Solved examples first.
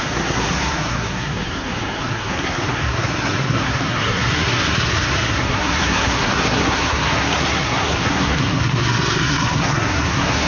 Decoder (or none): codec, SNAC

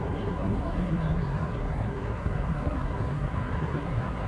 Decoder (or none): codec, SNAC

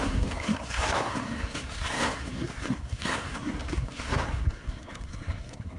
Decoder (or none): codec, SNAC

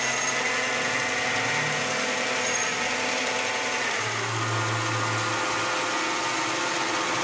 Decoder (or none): none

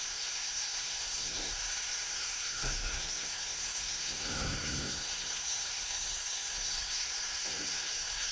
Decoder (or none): codec, SNAC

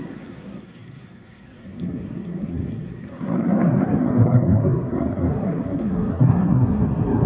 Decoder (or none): codec, SNAC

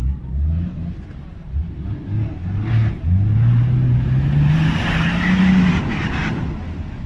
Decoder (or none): none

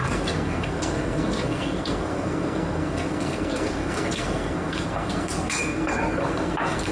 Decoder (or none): codec, SNAC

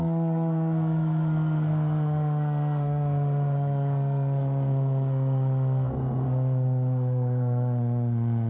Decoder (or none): codec, SNAC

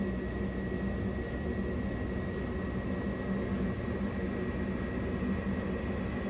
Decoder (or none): none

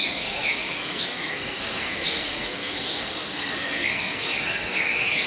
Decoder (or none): codec, SNAC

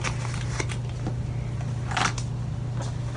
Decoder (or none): none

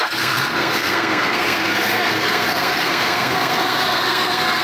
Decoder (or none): codec, SNAC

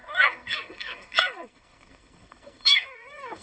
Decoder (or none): codec, SNAC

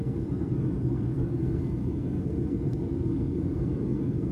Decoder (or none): codec, SNAC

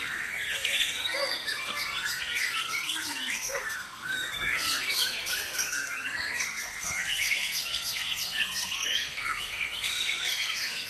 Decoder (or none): codec, SNAC